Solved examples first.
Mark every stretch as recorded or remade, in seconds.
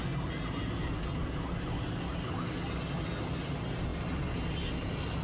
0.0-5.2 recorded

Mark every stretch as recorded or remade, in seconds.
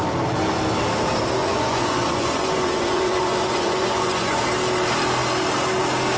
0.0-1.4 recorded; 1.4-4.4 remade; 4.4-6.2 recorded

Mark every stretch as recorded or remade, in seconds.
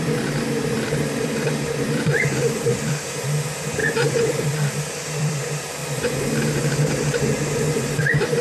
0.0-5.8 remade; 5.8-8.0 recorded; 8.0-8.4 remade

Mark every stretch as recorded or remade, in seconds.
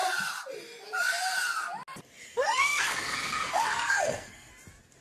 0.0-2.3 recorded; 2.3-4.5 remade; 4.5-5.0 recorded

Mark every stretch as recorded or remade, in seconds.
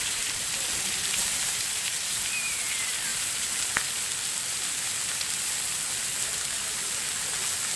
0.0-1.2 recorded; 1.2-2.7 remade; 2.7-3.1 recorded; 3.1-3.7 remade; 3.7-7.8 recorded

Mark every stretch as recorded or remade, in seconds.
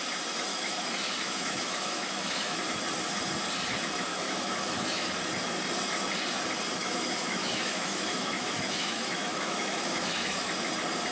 0.0-0.5 recorded; 0.5-2.6 remade; 2.6-4.1 recorded; 4.1-5.1 remade; 5.1-6.8 recorded; 6.8-10.7 remade; 10.7-11.1 recorded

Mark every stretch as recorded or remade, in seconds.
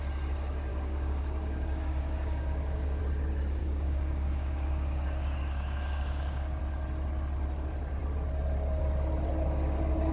0.0-0.7 recorded; 0.7-3.0 remade; 3.0-3.6 recorded; 3.6-6.6 remade; 6.6-10.1 recorded